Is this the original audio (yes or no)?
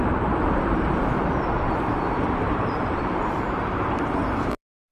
no